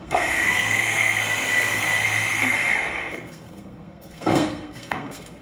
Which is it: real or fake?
fake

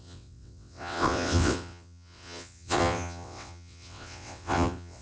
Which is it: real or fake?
fake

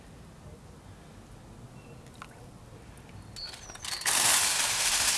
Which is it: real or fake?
real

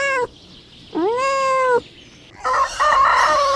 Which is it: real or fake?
real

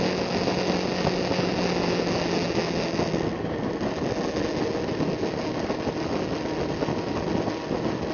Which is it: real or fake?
real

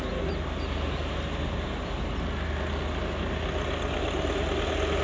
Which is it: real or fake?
real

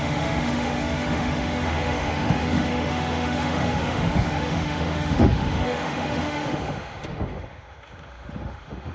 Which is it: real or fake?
fake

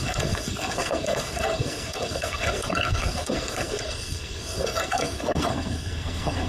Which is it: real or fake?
fake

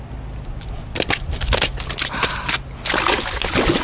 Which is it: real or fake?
real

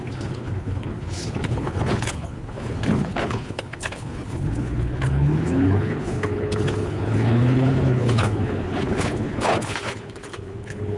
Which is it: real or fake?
fake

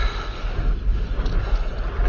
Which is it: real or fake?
real